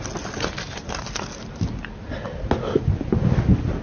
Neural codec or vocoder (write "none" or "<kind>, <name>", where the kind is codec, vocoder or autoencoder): none